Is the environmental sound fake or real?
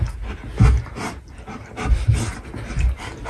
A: real